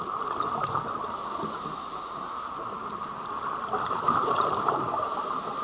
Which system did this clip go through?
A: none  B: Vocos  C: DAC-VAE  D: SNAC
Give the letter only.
A